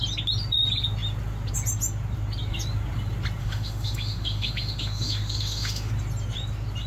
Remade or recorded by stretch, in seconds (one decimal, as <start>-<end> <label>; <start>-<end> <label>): 0.0-3.4 recorded; 3.4-5.9 remade; 5.9-6.9 recorded

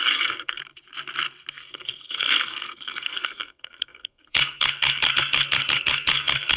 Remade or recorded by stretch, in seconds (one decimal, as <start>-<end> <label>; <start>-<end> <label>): 0.0-0.6 remade; 0.6-1.5 recorded; 1.5-6.6 remade